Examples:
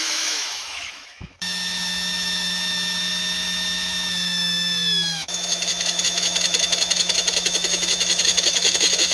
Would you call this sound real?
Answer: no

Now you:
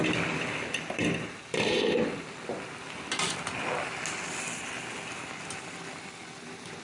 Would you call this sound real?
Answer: yes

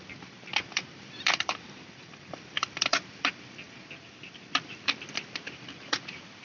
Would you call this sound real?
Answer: no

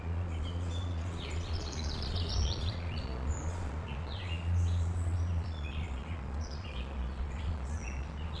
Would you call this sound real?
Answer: no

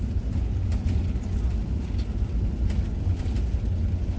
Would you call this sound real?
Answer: yes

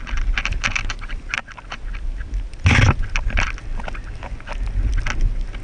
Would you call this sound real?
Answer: yes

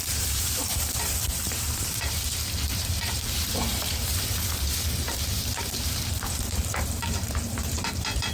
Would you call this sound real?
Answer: no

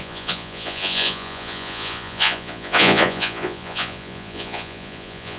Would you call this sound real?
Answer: no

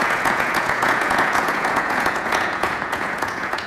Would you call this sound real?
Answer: no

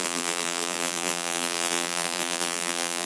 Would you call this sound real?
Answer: no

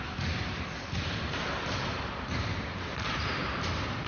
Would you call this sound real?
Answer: no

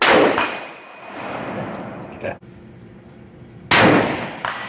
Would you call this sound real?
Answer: yes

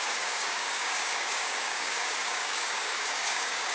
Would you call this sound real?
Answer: no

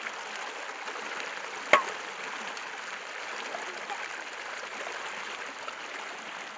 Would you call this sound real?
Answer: yes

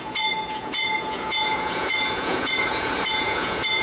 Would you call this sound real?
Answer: no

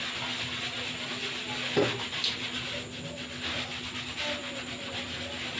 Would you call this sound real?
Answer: yes